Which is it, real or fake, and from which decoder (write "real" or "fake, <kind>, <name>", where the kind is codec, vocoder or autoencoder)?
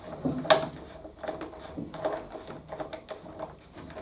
real